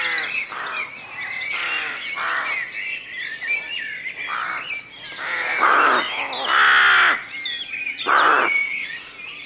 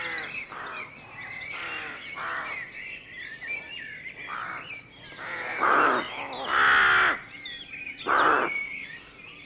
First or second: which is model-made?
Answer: second